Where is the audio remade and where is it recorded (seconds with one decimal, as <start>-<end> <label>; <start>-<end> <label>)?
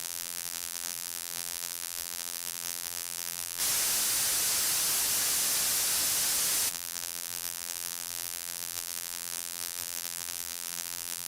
0.0-3.6 remade; 3.6-6.7 recorded; 6.7-11.3 remade